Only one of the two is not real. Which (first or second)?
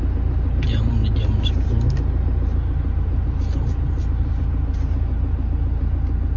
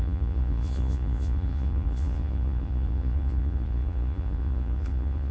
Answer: second